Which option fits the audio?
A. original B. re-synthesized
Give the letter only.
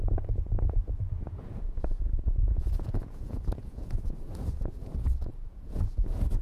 B